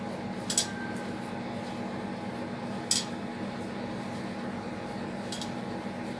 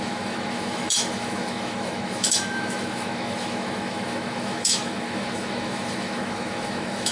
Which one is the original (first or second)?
first